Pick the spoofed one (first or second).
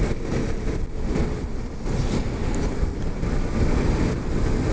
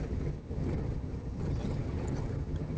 second